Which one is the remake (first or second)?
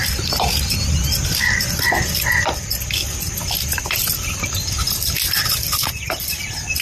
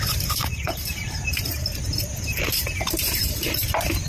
second